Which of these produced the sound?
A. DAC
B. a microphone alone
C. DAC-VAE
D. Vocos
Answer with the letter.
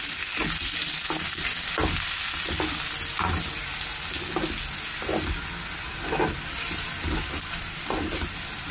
B